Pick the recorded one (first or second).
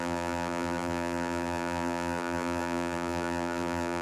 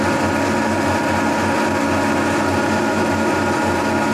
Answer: second